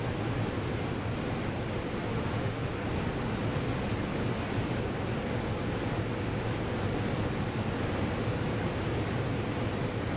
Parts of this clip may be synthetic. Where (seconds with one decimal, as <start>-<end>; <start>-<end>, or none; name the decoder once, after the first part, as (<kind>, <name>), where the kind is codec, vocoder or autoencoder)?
2.1-2.7 (autoencoder, DAC-VAE)